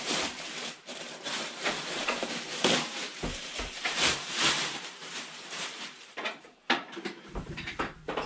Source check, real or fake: fake